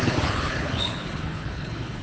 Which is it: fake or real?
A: fake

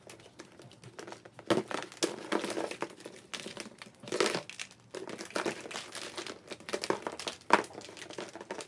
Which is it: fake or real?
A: real